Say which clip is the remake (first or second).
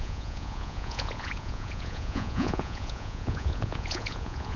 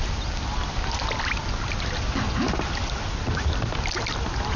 first